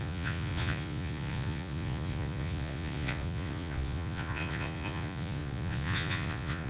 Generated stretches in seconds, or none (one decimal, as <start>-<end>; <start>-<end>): 0.0-6.7